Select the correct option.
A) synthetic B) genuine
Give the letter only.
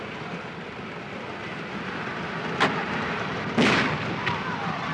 B